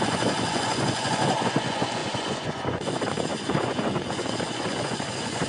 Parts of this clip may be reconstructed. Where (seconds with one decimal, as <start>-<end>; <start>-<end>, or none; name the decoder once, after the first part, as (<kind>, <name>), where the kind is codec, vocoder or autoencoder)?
0.0-5.5 (vocoder, Vocos)